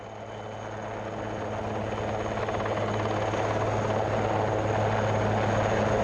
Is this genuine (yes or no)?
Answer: yes